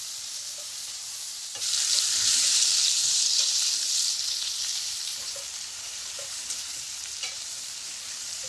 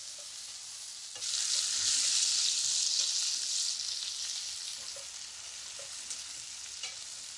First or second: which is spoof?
first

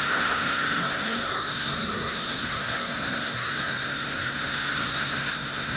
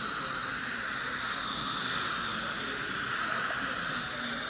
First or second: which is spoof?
first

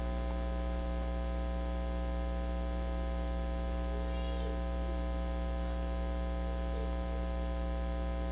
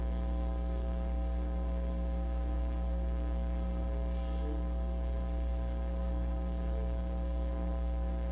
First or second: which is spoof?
second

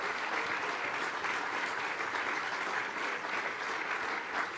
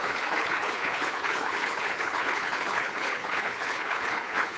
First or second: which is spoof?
second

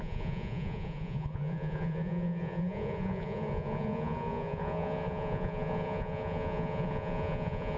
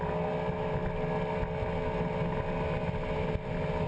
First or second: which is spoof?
first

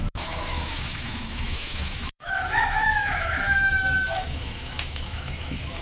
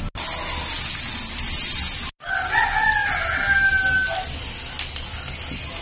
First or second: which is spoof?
first